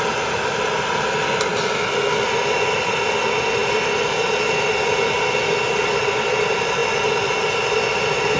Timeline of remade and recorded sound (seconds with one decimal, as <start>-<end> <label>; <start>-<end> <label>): 0.0-8.4 recorded